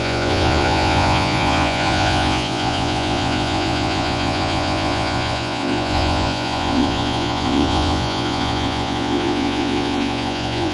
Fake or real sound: fake